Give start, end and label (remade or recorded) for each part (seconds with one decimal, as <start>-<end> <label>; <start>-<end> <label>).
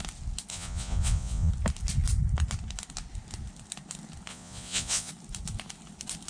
0.0-0.5 recorded; 0.5-1.5 remade; 1.5-4.3 recorded; 4.3-5.1 remade; 5.1-6.3 recorded